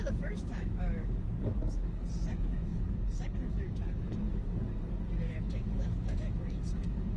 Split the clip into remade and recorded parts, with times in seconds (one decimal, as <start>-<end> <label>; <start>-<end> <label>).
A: 0.0-7.2 remade